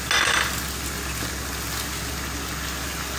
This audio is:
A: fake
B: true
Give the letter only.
B